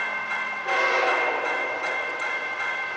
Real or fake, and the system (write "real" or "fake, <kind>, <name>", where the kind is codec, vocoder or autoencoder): fake, vocoder, WaveNeXt